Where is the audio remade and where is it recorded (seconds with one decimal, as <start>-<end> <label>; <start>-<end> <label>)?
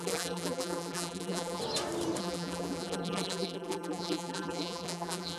0.0-1.6 remade; 1.6-2.2 recorded; 2.2-5.4 remade